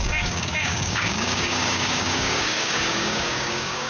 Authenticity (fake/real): fake